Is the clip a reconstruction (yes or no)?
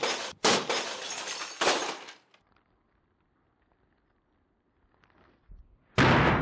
no